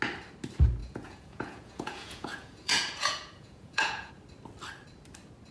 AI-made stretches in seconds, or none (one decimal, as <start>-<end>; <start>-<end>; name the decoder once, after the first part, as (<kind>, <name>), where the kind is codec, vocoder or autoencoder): 0.8-4.1 (vocoder, Vocos)